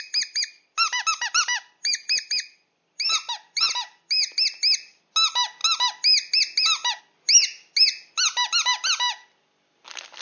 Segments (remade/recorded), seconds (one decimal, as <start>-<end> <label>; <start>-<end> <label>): 0.0-10.2 recorded